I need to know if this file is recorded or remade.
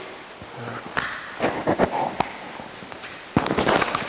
recorded